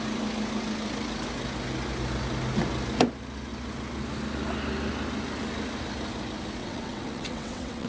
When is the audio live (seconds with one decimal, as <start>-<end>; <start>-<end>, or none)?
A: 0.0-6.6